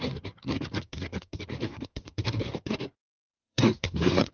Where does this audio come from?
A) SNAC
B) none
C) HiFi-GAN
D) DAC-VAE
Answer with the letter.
A